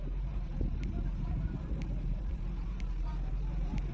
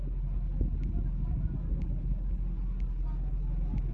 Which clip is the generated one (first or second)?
first